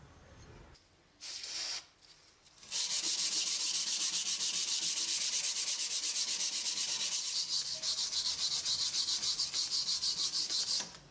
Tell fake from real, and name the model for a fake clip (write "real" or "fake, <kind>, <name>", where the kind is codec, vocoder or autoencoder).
fake, vocoder, BigVGAN v2